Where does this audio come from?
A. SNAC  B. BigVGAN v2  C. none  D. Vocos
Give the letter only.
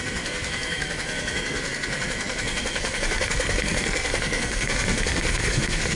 A